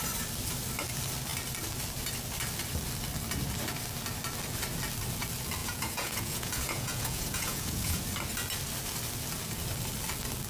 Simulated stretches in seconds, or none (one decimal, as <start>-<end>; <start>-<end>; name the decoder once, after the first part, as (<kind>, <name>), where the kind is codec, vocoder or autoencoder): 5.6-8.0 (vocoder, Vocos)